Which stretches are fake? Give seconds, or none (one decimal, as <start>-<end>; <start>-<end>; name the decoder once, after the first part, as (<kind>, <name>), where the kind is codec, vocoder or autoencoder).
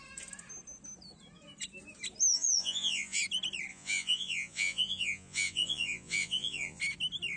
2.3-3.2 (vocoder, Vocos); 3.7-6.8